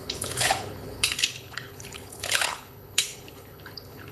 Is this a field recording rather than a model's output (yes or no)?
no